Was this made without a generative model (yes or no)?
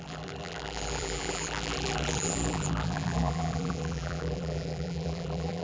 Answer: no